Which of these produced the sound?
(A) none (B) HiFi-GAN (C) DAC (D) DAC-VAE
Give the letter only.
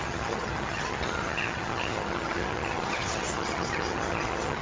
B